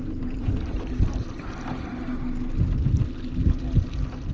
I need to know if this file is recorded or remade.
recorded